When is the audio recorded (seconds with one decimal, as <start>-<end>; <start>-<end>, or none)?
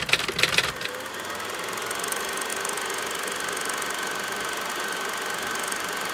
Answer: 0.0-6.1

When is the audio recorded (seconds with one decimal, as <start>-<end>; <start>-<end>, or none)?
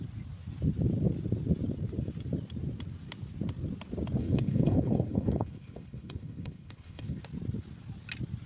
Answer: 0.0-4.2; 7.2-8.5